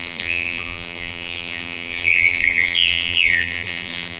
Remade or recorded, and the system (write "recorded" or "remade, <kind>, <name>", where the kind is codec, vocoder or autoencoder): remade, vocoder, BigVGAN v2